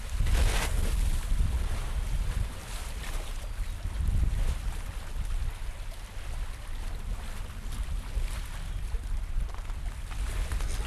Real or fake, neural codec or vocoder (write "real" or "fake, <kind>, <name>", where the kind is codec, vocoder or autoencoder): real